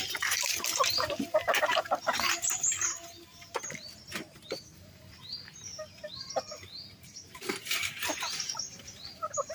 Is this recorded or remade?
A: remade